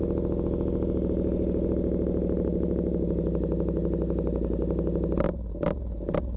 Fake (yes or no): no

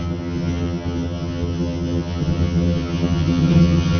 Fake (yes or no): yes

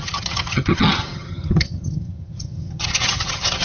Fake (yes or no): yes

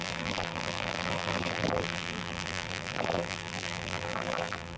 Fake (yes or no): yes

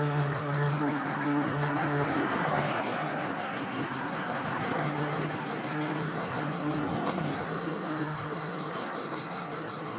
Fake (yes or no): yes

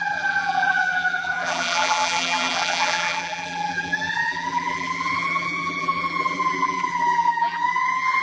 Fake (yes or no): yes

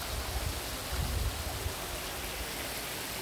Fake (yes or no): no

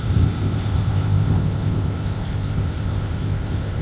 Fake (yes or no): yes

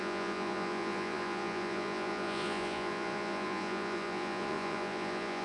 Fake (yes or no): yes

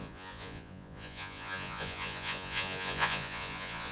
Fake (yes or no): yes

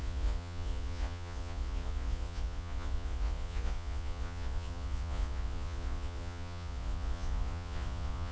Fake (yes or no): yes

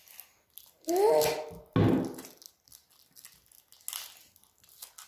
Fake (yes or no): no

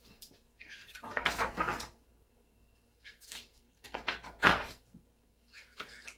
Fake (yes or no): yes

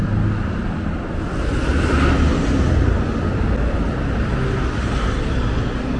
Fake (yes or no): no